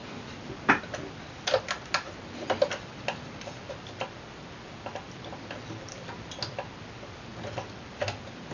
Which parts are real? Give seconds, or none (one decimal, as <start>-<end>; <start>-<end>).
0.0-8.5